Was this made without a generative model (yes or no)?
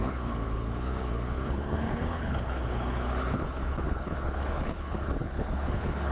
no